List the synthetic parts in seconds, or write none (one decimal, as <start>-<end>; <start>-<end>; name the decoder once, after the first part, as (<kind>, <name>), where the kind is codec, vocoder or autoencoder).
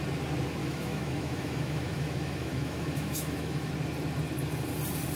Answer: 0.6-3.7 (autoencoder, DAC-VAE)